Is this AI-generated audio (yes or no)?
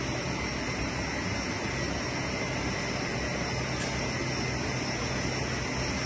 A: no